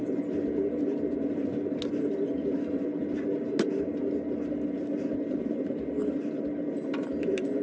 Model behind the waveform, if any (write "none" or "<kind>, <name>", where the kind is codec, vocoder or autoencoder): none